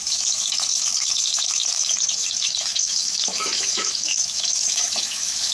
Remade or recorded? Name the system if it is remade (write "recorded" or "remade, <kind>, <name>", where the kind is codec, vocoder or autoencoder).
remade, autoencoder, DAC-VAE